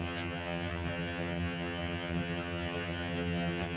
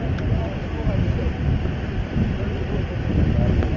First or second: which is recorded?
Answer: second